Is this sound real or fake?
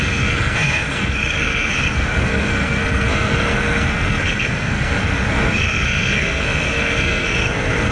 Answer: fake